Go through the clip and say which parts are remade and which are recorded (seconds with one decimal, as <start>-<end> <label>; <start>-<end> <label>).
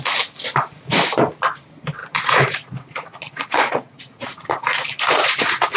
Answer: 0.0-2.0 recorded; 2.0-5.8 remade